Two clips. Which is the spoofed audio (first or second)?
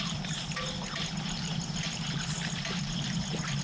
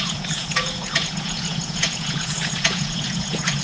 second